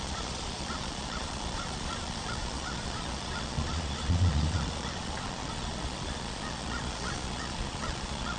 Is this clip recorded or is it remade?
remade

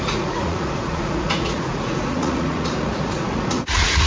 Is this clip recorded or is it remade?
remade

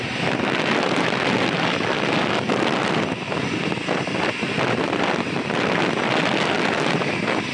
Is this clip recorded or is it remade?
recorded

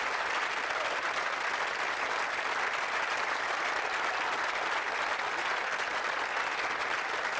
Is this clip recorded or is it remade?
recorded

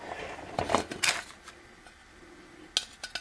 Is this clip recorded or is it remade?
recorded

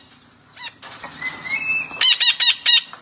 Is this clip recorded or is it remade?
recorded